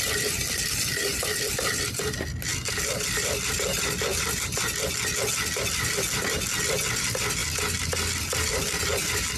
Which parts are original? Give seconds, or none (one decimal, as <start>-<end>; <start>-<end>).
0.0-9.4